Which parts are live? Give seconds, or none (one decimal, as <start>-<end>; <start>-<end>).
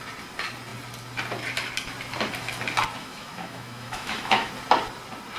0.0-3.0; 4.5-5.4